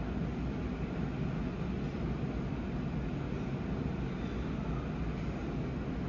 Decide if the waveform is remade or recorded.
recorded